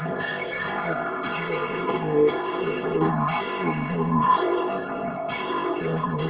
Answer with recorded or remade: remade